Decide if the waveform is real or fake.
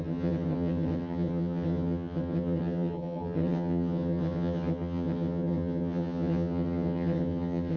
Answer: fake